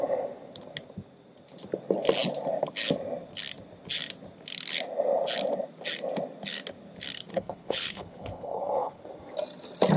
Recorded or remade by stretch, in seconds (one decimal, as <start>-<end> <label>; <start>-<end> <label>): 0.0-7.3 recorded; 7.3-9.0 remade; 9.0-10.0 recorded